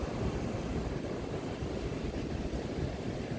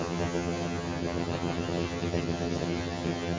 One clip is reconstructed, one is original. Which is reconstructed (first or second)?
second